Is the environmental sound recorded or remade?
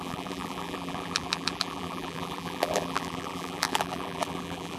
remade